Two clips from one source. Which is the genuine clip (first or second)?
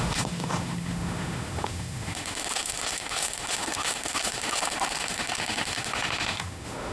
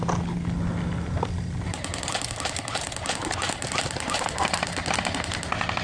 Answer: second